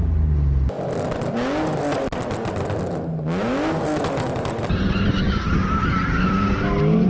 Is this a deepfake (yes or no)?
no